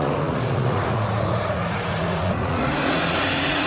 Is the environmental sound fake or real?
fake